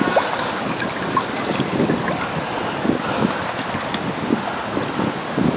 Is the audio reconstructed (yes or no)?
no